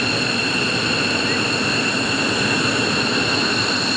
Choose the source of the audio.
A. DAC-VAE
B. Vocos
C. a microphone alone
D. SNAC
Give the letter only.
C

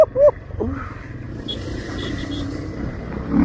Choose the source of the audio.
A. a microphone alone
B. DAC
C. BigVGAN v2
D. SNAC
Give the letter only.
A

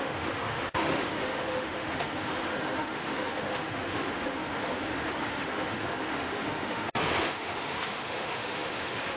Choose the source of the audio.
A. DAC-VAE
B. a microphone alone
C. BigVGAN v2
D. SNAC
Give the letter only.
A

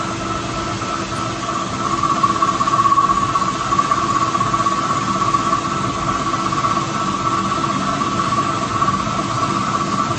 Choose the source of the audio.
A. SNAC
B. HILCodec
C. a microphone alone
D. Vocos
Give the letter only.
C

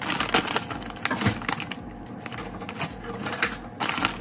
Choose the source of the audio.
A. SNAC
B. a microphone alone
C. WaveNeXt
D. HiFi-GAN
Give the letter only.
B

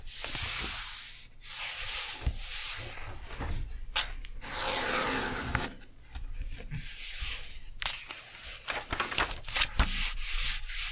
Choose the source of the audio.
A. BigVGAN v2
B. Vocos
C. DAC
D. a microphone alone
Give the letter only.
D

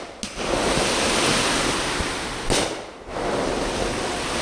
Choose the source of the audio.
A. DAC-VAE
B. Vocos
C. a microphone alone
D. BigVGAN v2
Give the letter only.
C